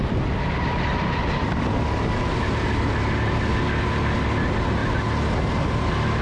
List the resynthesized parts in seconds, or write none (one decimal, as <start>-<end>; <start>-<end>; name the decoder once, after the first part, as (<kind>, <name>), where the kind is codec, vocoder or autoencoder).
none